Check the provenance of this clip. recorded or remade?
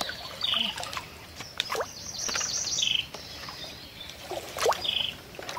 remade